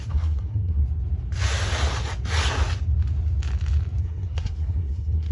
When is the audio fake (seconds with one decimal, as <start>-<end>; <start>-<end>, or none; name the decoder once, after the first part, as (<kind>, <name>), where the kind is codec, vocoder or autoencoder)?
0.0-0.8 (codec, SNAC); 4.0-5.3